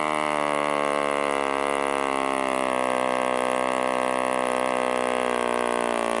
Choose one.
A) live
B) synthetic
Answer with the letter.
A